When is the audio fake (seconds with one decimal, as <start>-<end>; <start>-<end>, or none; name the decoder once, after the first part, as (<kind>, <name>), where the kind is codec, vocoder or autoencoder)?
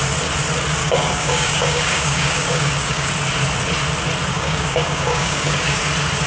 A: 0.8-3.1 (codec, DAC); 4.3-5.8